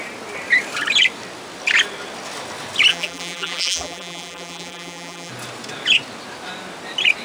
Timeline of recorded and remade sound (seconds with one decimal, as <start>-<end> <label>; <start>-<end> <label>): 0.0-2.9 recorded; 2.9-5.3 remade; 5.3-7.2 recorded